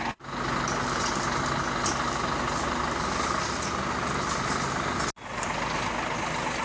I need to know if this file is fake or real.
real